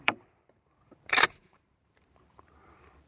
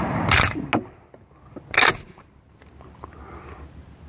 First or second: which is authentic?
second